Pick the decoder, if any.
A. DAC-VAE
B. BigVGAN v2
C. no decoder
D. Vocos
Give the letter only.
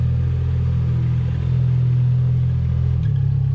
C